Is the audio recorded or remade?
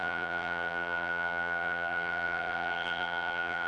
remade